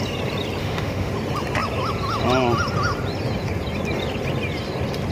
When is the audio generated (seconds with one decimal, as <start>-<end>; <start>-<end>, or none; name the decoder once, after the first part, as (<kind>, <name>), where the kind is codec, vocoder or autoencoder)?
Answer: 0.6-1.1 (autoencoder, DAC-VAE)